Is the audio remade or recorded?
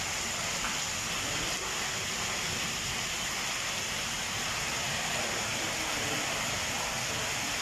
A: recorded